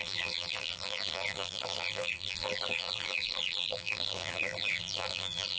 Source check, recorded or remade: remade